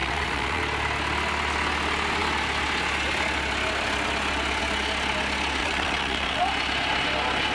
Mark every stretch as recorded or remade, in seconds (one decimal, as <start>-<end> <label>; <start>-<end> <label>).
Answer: 0.0-0.6 remade; 0.6-5.6 recorded; 5.6-6.4 remade; 6.4-7.5 recorded